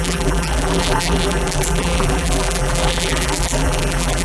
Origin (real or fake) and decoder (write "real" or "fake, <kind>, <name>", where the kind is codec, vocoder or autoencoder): fake, vocoder, BigVGAN v2